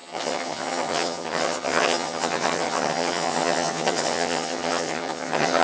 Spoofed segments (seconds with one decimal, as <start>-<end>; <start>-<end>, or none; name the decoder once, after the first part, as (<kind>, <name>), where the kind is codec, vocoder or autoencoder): 0.0-5.6 (vocoder, HiFi-GAN)